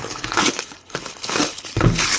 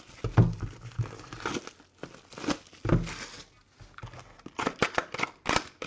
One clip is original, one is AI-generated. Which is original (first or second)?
second